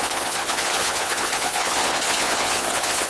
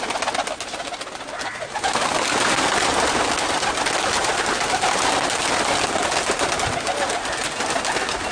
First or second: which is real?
second